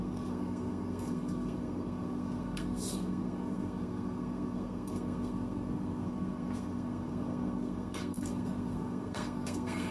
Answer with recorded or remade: remade